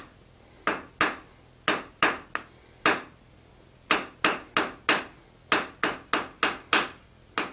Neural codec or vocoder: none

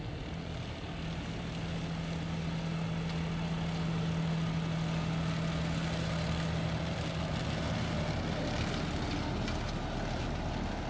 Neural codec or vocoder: none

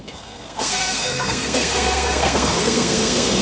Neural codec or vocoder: codec, SNAC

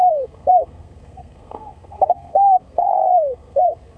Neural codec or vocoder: codec, SNAC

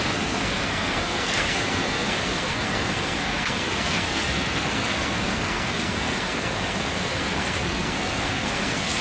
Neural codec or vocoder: codec, SNAC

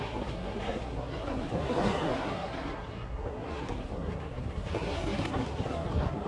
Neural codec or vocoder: codec, SNAC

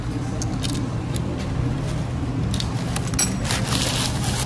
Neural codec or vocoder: none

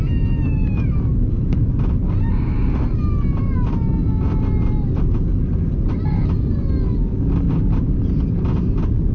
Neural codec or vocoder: none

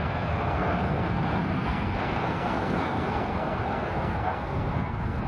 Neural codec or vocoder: codec, SNAC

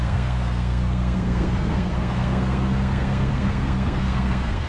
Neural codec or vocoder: codec, SNAC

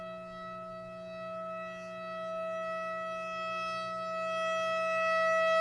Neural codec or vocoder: none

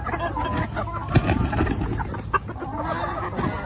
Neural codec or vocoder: none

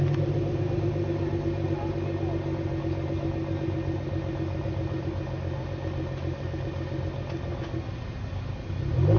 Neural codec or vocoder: none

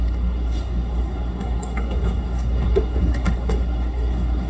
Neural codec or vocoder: codec, SNAC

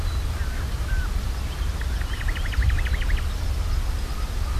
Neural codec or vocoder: none